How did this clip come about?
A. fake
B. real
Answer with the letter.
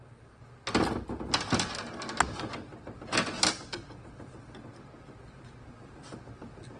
B